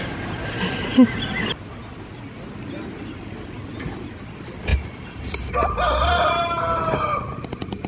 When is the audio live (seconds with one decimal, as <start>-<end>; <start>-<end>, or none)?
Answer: 0.0-4.7; 6.6-7.9